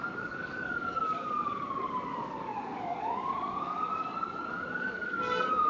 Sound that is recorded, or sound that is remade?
remade